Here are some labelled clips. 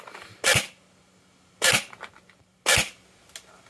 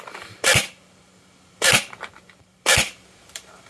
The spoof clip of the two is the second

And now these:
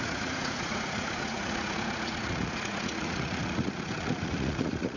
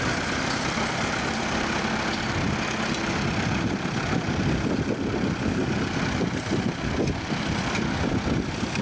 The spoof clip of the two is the first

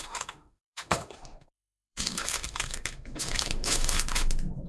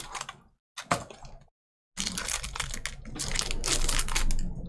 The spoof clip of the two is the first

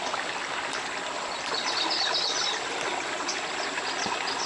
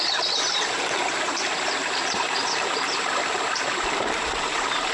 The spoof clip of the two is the second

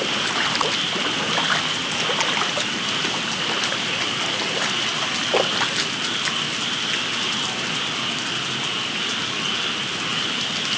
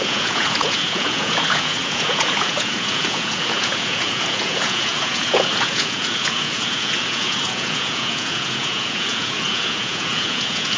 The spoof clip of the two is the second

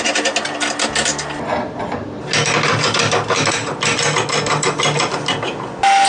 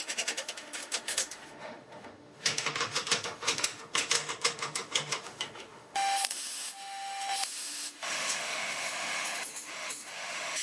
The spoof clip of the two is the second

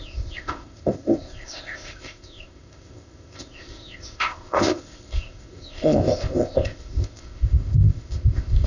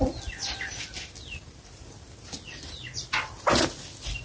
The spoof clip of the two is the first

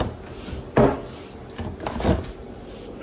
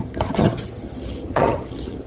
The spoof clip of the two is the second